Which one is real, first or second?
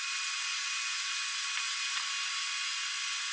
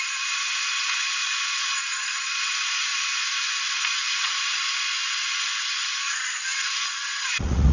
first